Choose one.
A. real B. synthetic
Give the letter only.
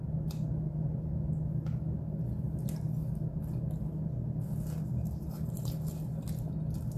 A